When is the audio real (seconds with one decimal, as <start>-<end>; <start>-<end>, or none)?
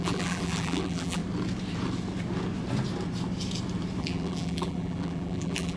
1.2-4.0